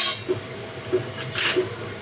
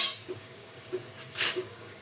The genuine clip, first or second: first